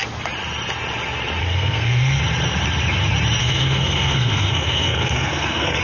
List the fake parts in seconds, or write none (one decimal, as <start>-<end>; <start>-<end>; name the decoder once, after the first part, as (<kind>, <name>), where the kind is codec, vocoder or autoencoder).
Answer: 1.4-2.2 (codec, SNAC); 3.4-5.8